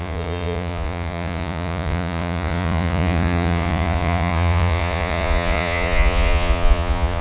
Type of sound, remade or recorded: remade